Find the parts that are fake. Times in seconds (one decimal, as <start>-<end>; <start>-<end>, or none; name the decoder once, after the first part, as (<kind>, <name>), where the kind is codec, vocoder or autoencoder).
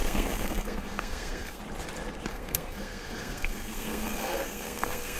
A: 0.0-1.6 (codec, SNAC); 2.3-5.2